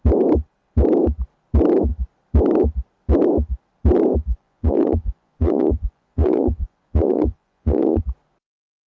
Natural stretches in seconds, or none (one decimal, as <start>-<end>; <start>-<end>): 0.0-4.3; 8.0-8.9